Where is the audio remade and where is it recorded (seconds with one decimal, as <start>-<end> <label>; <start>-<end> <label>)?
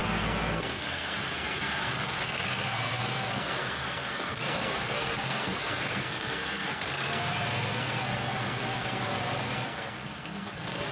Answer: 0.0-10.9 remade